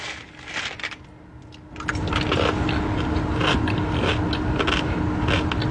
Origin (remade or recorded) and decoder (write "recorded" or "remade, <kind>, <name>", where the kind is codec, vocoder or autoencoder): recorded